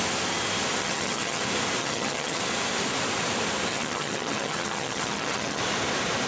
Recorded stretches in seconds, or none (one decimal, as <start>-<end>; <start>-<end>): 0.0-0.8; 1.4-1.8; 2.4-3.7; 5.6-6.3